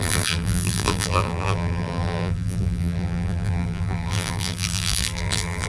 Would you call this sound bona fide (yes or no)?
no